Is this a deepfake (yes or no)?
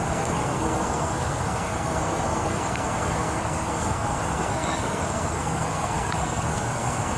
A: yes